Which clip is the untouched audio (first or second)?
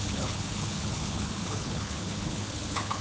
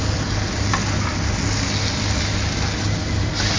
second